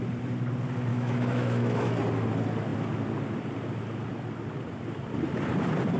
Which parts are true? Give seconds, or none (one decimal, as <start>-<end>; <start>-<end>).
0.0-0.9; 1.9-6.0